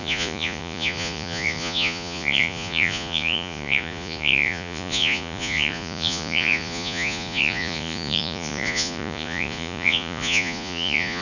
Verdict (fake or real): fake